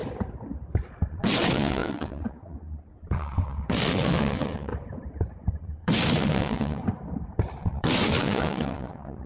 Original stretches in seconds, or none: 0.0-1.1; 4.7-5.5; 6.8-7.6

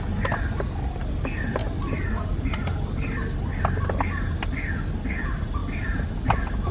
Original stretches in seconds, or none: 0.0-6.7

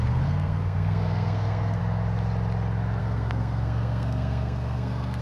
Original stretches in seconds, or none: 1.8-3.0

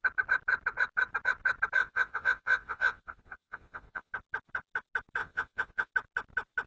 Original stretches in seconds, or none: 0.0-1.8; 4.1-5.2; 5.9-6.7